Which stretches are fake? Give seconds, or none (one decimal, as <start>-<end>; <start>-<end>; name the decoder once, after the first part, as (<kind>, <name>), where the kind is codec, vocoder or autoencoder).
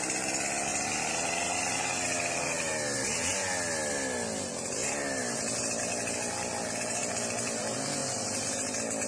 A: none